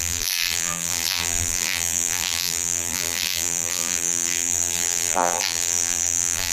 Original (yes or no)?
no